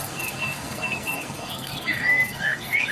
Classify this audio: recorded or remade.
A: remade